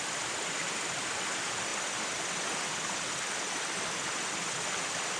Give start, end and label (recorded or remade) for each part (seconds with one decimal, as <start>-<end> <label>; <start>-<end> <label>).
0.0-5.2 recorded